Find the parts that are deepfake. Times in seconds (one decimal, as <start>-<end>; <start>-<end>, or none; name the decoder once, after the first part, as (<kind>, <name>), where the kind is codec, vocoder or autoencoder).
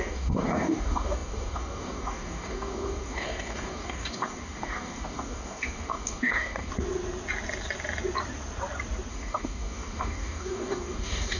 0.0-6.7 (codec, DAC); 9.1-11.4